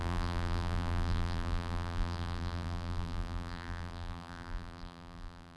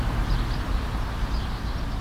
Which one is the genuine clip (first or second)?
second